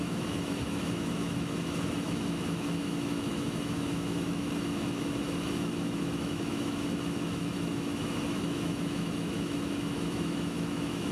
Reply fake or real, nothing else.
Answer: fake